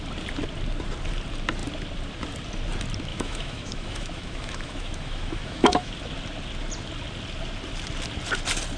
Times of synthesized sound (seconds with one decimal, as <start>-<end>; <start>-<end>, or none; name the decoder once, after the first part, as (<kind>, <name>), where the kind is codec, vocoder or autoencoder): 3.1-5.9 (autoencoder, DAC-VAE)